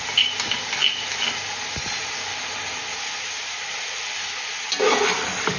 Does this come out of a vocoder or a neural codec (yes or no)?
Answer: no